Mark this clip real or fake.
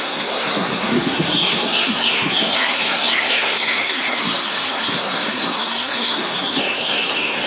fake